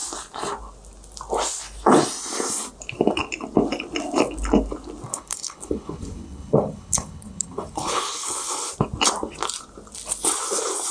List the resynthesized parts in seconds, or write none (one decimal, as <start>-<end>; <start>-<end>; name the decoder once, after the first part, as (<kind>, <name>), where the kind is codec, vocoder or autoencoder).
5.1-8.7 (codec, HILCodec)